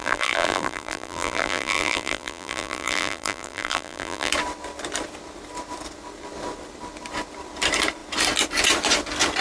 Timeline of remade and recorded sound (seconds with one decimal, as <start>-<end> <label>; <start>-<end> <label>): 0.0-4.3 remade; 4.3-9.4 recorded